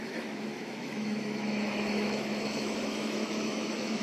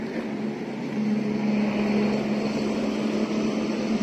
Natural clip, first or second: second